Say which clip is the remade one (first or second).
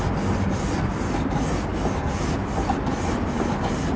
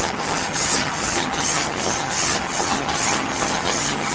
second